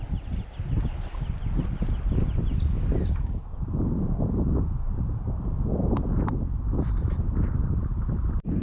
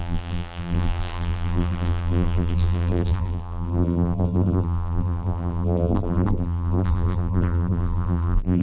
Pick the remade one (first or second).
second